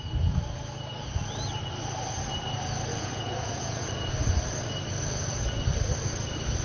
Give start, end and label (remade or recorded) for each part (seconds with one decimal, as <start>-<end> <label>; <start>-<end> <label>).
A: 0.0-2.9 recorded; 2.9-4.1 remade; 4.1-6.6 recorded